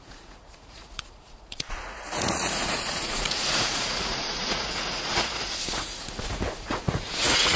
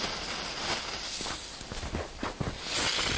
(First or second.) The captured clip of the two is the second